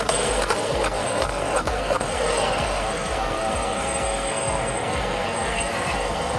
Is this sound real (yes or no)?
no